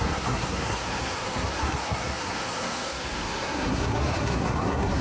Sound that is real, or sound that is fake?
fake